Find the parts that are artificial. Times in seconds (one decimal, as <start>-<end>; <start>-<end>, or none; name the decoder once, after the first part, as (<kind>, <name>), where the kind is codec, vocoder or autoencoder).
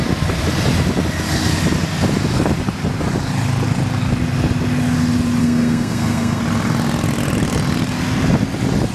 5.4-6.4 (codec, SNAC)